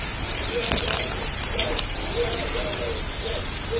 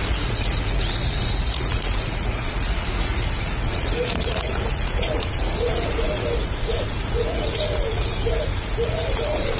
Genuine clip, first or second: first